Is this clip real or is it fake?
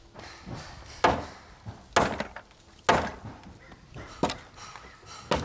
real